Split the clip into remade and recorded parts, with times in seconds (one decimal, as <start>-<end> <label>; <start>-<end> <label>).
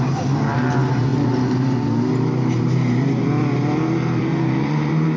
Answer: 0.0-5.2 recorded